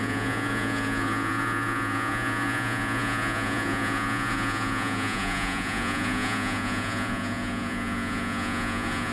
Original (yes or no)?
no